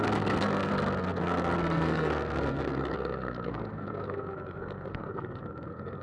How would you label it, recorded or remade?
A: remade